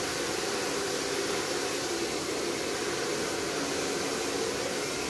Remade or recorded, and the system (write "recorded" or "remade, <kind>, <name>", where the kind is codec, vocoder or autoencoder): recorded